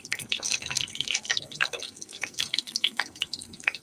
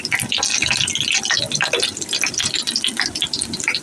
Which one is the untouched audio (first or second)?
second